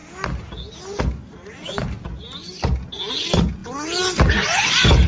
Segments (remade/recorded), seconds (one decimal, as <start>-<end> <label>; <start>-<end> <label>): 0.0-3.1 recorded; 3.1-5.1 remade

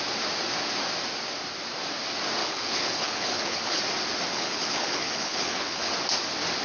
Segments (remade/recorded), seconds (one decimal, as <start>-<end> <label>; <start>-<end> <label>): 0.0-2.4 recorded; 2.4-3.8 remade; 3.8-4.3 recorded; 4.3-5.9 remade; 5.9-6.6 recorded

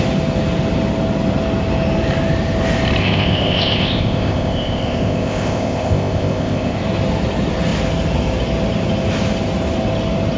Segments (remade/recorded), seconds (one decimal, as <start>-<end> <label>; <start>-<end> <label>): 0.0-3.0 recorded; 3.0-6.8 remade; 6.8-10.4 recorded

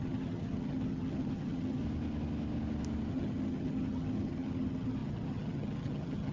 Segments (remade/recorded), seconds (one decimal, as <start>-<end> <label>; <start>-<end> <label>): 0.0-1.8 remade; 1.8-3.1 recorded; 3.1-6.3 remade

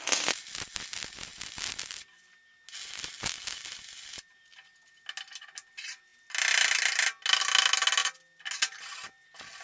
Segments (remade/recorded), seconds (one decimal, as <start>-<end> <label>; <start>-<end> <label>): 0.0-9.6 recorded